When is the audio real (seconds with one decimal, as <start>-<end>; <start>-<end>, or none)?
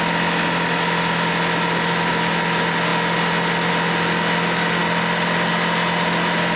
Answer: 0.0-6.6